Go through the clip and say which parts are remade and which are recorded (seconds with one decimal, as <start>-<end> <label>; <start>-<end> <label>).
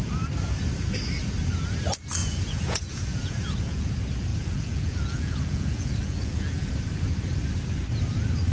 0.0-2.2 recorded; 2.2-3.9 remade; 3.9-4.3 recorded; 4.3-6.7 remade; 6.7-8.5 recorded